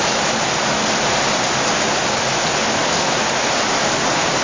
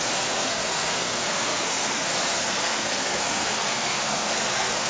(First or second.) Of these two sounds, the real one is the first